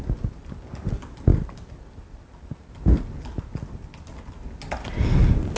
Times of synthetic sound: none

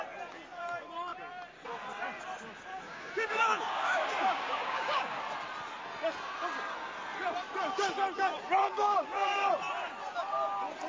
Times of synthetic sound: 2.7-5.2 (codec, DAC); 8.6-9.5

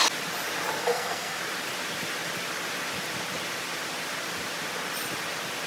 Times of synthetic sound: 0.8-1.4 (codec, SNAC)

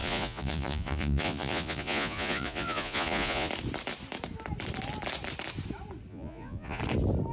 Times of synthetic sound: 0.0-3.5 (vocoder, Vocos); 6.1-6.8

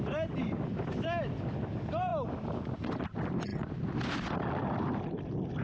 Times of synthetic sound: none